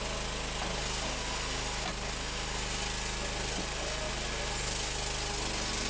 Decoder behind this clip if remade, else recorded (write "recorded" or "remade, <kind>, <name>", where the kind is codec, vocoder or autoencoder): recorded